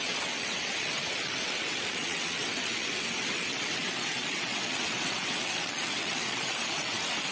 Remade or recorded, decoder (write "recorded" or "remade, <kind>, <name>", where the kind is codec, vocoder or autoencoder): remade, vocoder, WaveNeXt